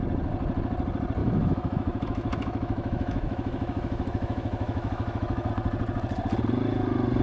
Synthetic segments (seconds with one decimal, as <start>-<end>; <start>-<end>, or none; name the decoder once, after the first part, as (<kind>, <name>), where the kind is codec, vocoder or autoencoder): 1.2-5.5 (autoencoder, DAC-VAE)